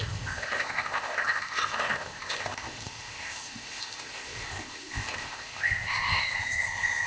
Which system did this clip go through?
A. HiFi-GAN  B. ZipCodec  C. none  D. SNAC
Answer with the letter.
B